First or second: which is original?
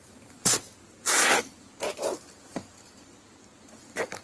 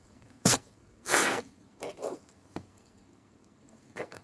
first